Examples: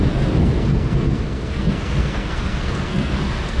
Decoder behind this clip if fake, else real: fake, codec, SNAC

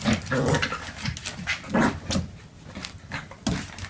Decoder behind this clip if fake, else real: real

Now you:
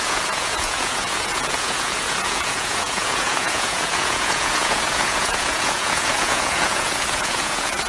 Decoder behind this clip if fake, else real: fake, vocoder, Vocos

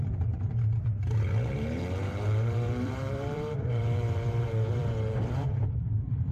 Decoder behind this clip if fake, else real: fake, vocoder, BigVGAN v2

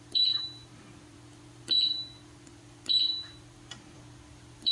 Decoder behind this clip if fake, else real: fake, vocoder, BigVGAN v2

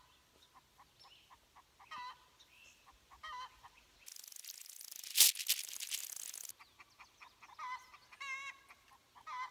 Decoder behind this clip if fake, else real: real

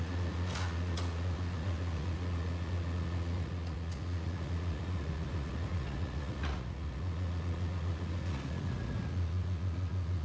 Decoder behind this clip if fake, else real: fake, vocoder, Vocos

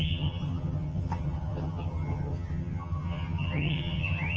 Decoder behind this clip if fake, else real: fake, vocoder, HiFi-GAN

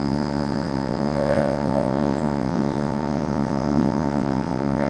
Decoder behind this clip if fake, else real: fake, vocoder, WaveNeXt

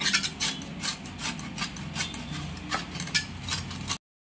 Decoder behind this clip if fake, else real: real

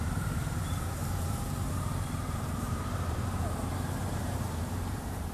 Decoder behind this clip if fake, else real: fake, vocoder, BigVGAN v2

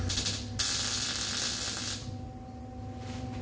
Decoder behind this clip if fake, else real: real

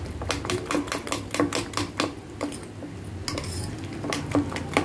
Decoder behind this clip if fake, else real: real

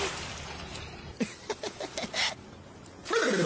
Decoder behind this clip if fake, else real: real